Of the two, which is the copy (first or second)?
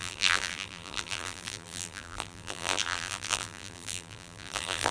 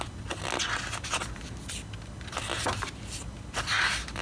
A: first